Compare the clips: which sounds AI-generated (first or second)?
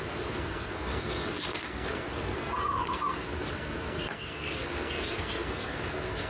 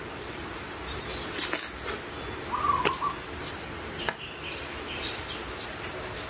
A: first